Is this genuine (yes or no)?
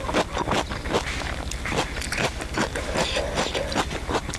yes